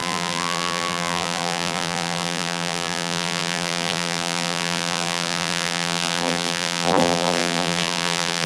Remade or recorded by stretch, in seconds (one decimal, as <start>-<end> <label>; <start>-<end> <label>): 0.0-8.5 remade